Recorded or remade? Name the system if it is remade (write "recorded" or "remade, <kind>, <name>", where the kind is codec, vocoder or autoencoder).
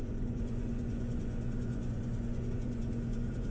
remade, vocoder, Vocos